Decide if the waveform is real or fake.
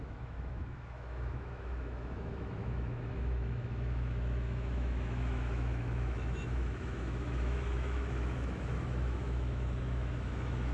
fake